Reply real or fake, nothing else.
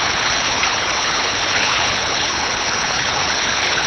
fake